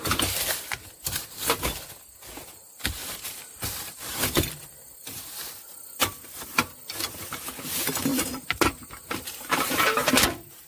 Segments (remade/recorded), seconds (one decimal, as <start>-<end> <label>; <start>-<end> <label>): 0.0-3.0 recorded; 3.0-4.4 remade; 4.4-8.1 recorded; 8.1-10.1 remade; 10.1-10.7 recorded